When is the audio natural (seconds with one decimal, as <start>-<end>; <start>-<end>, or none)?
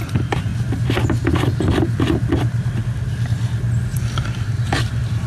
0.5-3.7